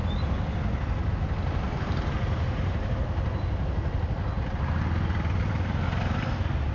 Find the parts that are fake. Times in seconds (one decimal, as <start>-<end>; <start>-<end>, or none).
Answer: none